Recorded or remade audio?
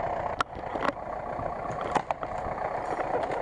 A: recorded